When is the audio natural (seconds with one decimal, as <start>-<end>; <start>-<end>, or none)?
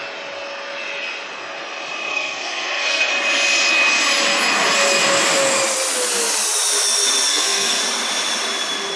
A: 0.0-2.1; 3.1-7.3; 7.8-9.0